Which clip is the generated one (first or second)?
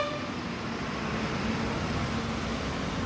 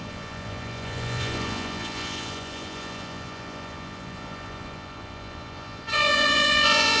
second